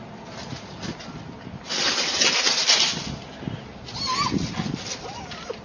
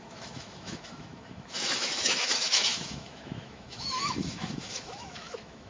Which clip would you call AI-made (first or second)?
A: second